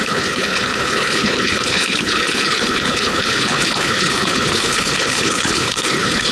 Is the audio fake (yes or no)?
yes